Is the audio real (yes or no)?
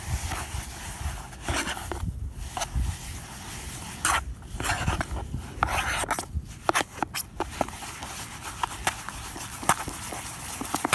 yes